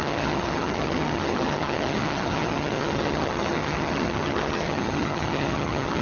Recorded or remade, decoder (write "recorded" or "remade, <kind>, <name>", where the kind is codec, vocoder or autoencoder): remade, vocoder, HiFi-GAN